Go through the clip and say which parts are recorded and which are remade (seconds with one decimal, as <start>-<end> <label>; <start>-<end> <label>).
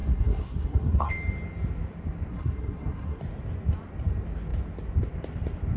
0.0-1.1 remade; 1.1-2.3 recorded; 2.3-3.2 remade; 3.2-5.8 recorded